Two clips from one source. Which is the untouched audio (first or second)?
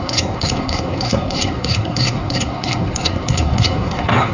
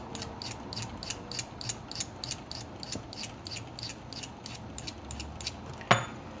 second